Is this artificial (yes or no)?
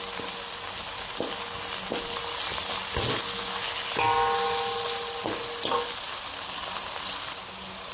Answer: no